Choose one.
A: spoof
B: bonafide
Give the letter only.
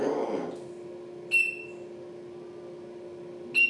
B